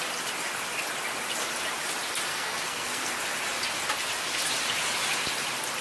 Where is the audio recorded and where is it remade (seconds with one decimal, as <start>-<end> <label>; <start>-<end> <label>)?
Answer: 0.0-2.3 recorded; 2.3-3.1 remade; 3.1-5.8 recorded